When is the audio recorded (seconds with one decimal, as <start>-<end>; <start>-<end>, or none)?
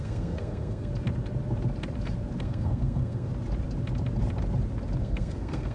0.9-2.4; 3.3-5.0